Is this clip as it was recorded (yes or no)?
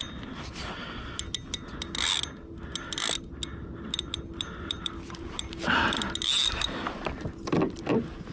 yes